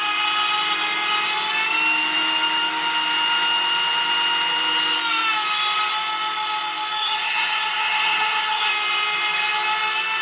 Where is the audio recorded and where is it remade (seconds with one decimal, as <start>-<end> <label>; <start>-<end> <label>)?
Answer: 0.0-7.0 recorded; 7.0-8.7 remade; 8.7-10.2 recorded